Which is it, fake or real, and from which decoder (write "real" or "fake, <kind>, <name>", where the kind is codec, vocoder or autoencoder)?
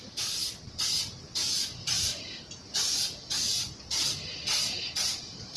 real